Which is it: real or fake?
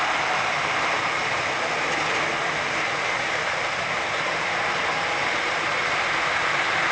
real